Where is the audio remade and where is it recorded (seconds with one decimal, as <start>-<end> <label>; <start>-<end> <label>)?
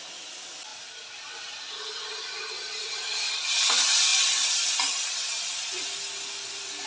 0.0-6.9 recorded